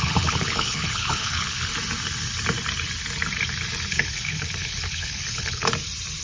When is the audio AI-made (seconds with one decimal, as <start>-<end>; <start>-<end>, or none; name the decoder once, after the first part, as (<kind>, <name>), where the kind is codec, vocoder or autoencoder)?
0.0-1.7 (codec, HILCodec); 3.9-5.7